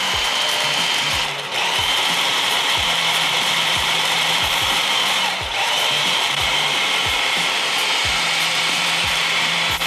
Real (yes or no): no